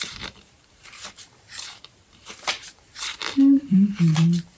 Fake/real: fake